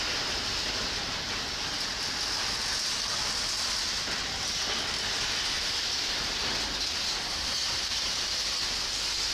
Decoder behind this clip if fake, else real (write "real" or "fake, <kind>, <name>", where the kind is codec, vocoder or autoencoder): real